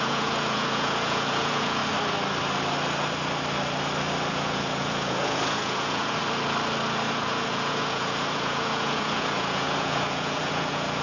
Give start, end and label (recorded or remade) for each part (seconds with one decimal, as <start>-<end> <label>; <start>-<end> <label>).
0.0-1.8 remade; 1.8-4.3 recorded; 4.3-6.2 remade; 6.2-7.1 recorded; 7.1-11.0 remade